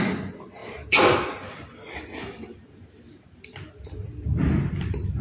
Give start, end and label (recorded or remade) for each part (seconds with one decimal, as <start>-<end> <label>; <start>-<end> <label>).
0.0-5.2 recorded